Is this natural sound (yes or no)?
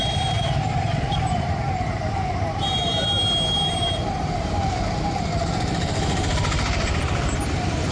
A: no